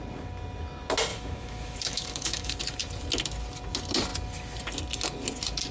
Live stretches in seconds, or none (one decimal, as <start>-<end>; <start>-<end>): 0.0-1.1; 2.6-5.7